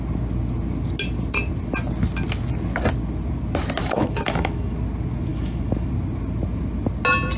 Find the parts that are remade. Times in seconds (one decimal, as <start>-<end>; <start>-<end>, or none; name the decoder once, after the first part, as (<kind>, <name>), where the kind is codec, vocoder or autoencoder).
3.8-4.8 (autoencoder, DAC-VAE); 5.3-5.9